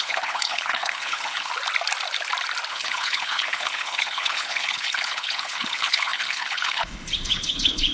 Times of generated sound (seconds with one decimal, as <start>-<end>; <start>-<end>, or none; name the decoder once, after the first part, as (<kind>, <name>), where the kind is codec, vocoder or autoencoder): 0.0-1.5 (codec, HILCodec); 2.7-7.9